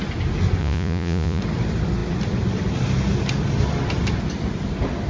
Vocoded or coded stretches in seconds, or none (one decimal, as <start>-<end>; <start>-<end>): 0.6-1.4